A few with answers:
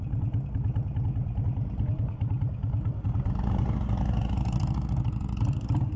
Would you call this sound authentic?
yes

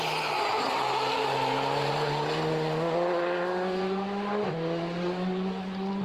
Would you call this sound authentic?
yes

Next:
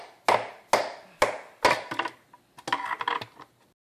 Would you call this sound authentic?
yes